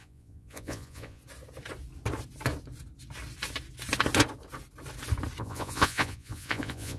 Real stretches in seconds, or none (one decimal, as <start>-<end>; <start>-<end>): 1.2-5.4